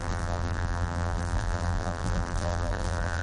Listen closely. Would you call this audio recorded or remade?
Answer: remade